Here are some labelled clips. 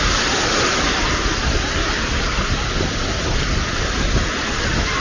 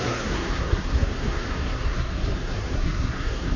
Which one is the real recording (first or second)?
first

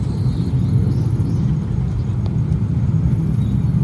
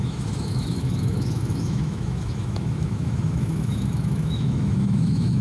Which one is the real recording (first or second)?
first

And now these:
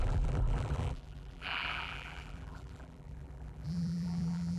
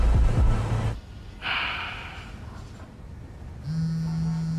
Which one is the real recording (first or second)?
second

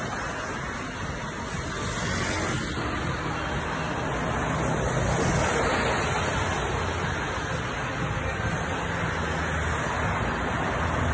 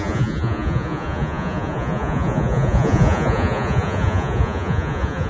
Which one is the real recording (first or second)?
first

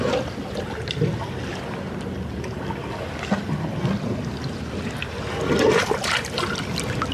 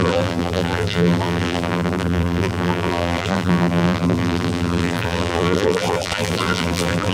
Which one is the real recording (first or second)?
first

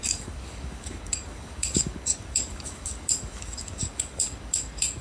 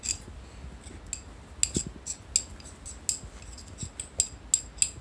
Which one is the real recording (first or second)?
second